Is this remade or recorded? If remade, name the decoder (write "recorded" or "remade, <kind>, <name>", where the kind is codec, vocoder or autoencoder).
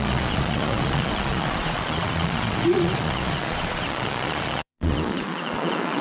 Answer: remade, vocoder, Vocos